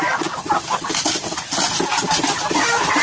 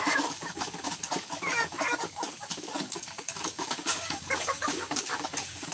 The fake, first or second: second